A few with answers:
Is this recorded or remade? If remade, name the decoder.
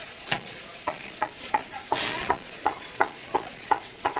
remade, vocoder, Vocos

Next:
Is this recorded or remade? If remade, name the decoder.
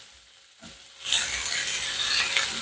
recorded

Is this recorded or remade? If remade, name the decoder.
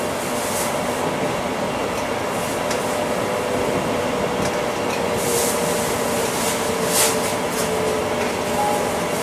recorded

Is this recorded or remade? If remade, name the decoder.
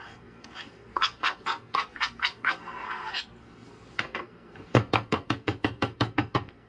remade, codec, SNAC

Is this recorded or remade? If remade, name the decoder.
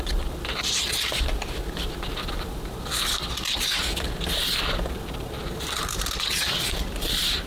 remade, vocoder, BigVGAN v2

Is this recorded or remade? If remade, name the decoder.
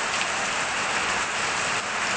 recorded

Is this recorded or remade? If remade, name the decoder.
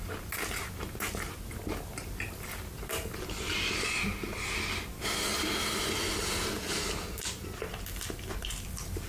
recorded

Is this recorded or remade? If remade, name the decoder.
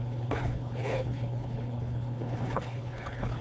remade, codec, HILCodec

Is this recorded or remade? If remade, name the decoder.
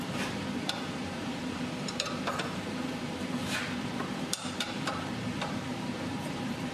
remade, vocoder, BigVGAN v2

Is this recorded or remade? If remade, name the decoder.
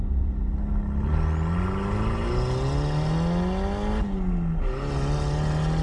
recorded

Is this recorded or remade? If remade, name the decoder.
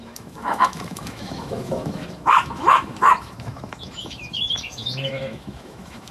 remade, autoencoder, DAC-VAE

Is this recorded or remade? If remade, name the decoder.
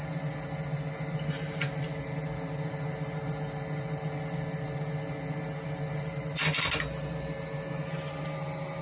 recorded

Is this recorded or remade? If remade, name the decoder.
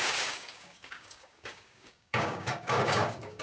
remade, codec, DAC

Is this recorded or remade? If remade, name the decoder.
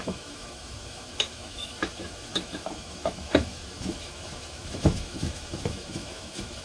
remade, autoencoder, DAC-VAE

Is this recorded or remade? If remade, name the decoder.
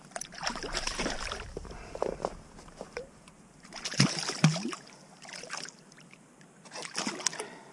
remade, vocoder, BigVGAN v2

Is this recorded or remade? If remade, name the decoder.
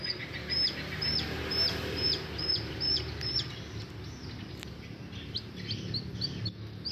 recorded